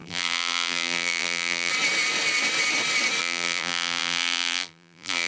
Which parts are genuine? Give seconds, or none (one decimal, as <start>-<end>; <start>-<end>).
1.7-3.2